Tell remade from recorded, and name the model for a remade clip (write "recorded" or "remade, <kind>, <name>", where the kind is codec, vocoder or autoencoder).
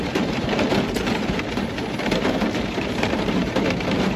remade, vocoder, BigVGAN v2